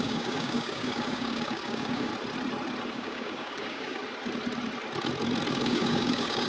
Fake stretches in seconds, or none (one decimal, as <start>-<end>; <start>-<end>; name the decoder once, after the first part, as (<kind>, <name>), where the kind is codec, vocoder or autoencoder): 0.0-2.1 (codec, DAC); 2.9-4.0; 5.5-6.5